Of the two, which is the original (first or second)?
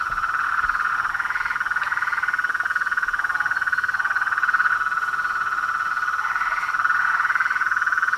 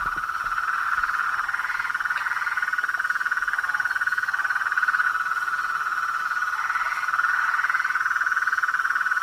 first